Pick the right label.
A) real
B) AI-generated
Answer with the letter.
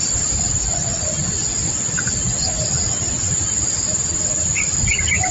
A